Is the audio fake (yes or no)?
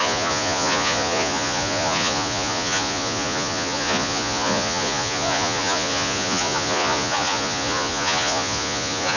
yes